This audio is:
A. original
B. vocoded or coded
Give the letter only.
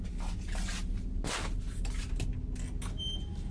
A